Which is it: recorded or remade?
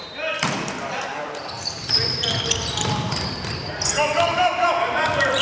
remade